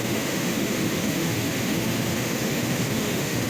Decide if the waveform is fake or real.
fake